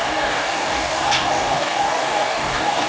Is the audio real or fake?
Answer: fake